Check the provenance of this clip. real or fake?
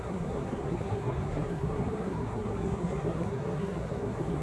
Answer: fake